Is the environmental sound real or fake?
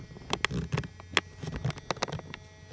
real